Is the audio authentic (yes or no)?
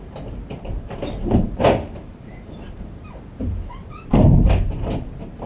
no